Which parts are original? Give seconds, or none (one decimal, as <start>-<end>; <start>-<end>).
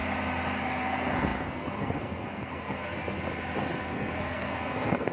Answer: 0.0-0.8; 3.0-3.8